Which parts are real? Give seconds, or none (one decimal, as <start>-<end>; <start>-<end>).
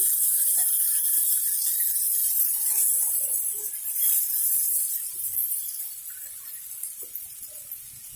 0.0-8.2